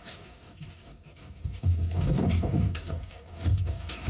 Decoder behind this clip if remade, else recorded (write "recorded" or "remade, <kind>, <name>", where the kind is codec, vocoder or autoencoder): remade, codec, DAC